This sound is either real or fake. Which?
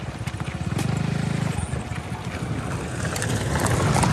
real